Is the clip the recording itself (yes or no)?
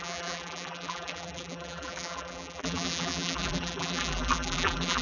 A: no